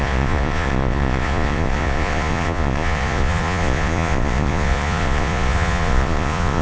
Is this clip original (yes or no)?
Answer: no